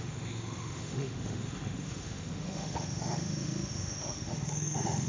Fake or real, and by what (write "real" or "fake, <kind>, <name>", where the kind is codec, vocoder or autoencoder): fake, autoencoder, DAC-VAE